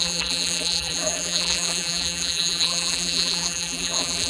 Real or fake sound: fake